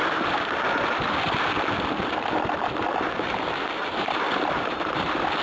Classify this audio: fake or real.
real